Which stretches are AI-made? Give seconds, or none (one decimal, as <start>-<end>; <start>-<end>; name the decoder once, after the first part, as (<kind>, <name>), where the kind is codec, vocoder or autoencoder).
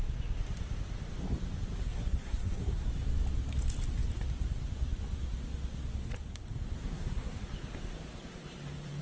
1.8-2.9 (codec, SNAC); 6.8-7.4